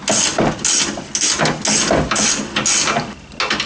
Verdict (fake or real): real